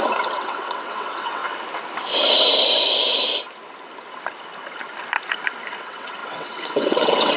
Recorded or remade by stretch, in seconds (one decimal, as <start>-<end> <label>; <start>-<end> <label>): 0.0-1.4 remade; 1.4-5.8 recorded; 5.8-7.4 remade